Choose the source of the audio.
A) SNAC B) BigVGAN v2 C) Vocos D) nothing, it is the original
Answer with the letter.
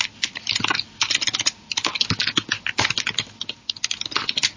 D